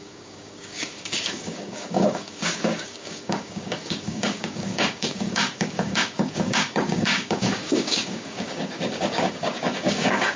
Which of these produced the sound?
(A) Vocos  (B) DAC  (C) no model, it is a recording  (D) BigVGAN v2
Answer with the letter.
B